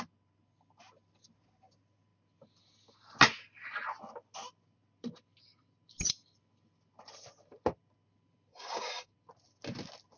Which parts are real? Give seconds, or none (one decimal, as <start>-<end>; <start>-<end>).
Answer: 0.0-8.5; 9.1-10.2